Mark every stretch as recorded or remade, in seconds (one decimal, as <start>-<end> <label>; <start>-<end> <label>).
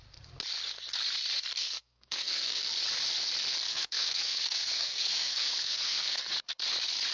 0.0-1.6 recorded; 1.6-2.6 remade; 2.6-3.7 recorded; 3.7-6.2 remade; 6.2-7.1 recorded